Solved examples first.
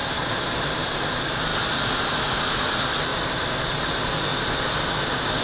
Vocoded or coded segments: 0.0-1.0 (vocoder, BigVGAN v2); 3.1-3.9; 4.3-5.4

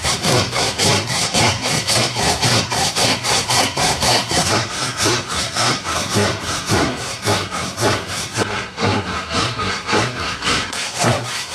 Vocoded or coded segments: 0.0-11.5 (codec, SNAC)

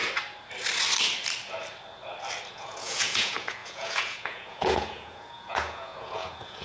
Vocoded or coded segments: 2.5-6.6 (vocoder, Vocos)

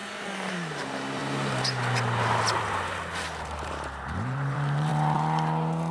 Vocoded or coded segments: 0.5-1.2 (vocoder, BigVGAN v2); 2.6-4.9

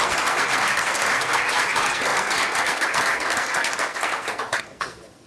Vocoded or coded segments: 0.0-5.3 (codec, SNAC)